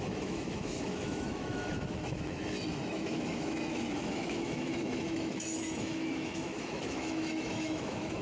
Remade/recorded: remade